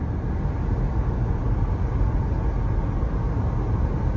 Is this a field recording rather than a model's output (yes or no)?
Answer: yes